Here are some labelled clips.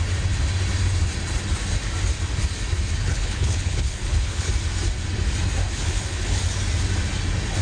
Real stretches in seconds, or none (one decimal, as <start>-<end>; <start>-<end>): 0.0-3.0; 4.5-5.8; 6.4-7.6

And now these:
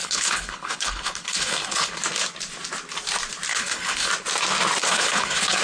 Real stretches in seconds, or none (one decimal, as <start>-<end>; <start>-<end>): 1.9-3.5; 4.1-4.8

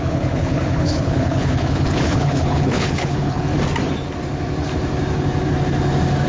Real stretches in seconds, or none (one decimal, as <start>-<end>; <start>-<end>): 3.5-6.3